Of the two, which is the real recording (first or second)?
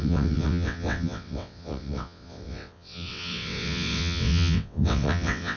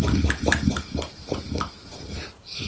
second